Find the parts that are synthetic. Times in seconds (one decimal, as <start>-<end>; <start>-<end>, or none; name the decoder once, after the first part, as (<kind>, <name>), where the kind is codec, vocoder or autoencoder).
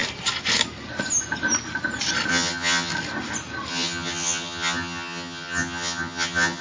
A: 2.3-2.9 (vocoder, HiFi-GAN); 3.7-6.6